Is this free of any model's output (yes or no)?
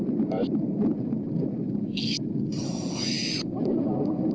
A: yes